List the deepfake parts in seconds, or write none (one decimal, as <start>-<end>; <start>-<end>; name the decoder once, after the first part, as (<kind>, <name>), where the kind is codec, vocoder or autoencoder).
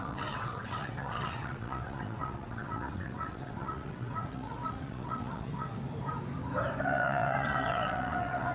0.0-5.7 (vocoder, WaveNeXt); 6.8-8.5